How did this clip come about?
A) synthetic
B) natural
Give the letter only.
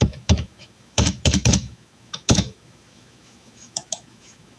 A